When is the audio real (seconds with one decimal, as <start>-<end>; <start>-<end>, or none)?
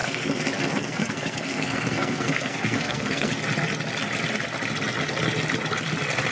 3.3-6.3